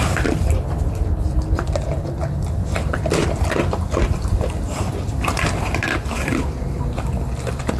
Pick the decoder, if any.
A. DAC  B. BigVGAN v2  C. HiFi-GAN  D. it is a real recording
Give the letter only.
B